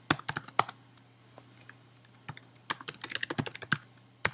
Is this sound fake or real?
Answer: real